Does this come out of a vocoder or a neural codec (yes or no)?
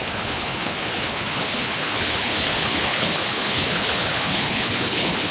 yes